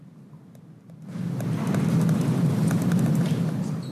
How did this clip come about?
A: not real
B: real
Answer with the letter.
B